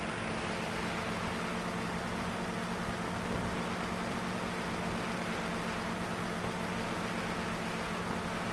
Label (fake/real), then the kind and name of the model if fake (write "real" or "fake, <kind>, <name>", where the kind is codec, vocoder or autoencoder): real